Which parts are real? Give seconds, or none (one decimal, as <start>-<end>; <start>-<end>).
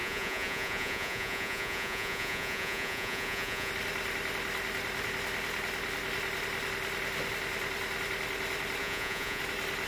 3.7-8.8; 9.4-9.9